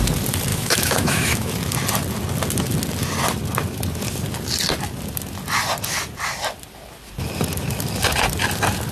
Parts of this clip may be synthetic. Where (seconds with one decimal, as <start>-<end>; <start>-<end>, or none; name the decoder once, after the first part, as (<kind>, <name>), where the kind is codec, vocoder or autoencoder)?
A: 0.5-1.5 (autoencoder, DAC-VAE)